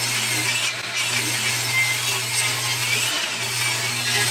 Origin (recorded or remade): recorded